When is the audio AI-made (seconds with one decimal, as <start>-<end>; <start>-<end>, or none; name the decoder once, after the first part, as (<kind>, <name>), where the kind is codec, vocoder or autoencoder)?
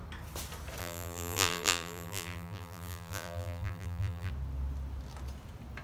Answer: 0.8-4.3 (vocoder, BigVGAN v2)